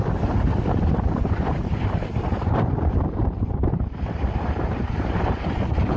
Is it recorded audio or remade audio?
remade